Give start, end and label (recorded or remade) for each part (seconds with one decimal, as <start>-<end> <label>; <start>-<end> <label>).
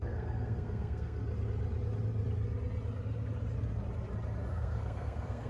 0.0-1.2 remade; 1.2-4.5 recorded; 4.5-5.5 remade